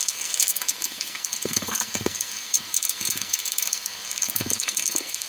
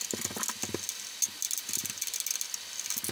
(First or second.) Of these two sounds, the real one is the second